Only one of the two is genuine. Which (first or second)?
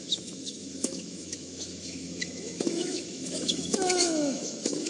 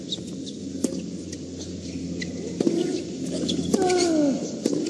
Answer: second